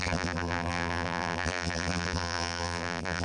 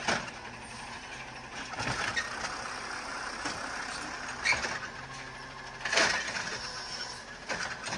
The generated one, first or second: first